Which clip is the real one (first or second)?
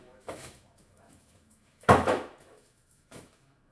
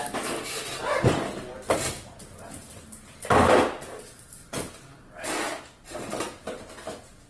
second